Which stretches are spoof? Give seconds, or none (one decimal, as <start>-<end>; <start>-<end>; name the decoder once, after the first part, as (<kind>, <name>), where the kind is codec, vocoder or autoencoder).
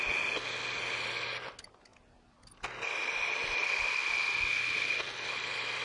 none